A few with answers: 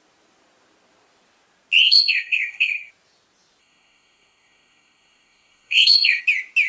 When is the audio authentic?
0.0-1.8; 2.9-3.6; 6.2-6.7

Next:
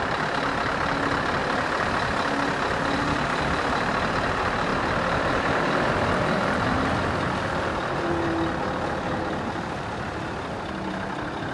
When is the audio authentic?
0.0-11.5

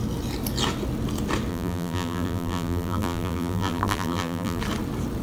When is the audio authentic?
0.0-1.5; 4.6-5.2

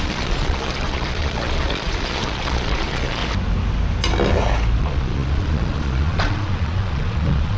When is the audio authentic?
3.2-4.8